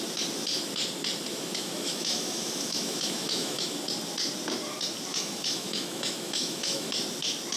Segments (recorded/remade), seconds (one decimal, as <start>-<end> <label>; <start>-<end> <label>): 0.0-1.3 recorded; 1.3-3.7 remade; 3.7-5.1 recorded; 5.1-6.9 remade; 6.9-7.6 recorded